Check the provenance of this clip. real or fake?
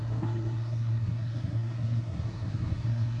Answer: fake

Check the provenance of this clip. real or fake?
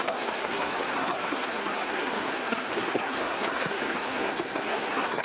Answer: fake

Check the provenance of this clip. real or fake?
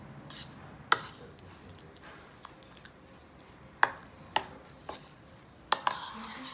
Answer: real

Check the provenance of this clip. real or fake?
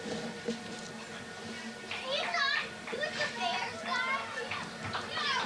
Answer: real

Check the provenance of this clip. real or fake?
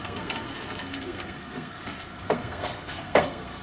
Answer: fake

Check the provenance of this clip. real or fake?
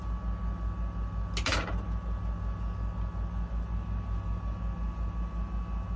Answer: real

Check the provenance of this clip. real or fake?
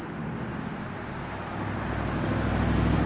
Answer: real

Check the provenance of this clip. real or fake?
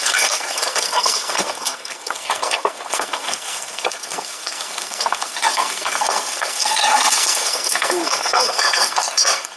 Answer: fake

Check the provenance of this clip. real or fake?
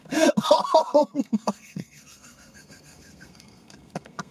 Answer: fake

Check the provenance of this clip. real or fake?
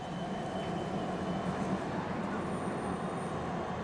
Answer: real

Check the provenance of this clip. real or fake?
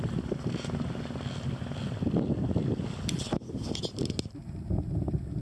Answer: real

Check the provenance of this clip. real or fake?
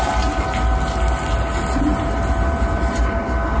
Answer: real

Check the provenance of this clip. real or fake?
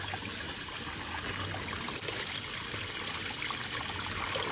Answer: real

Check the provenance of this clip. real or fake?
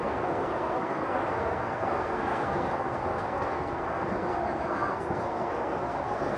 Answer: fake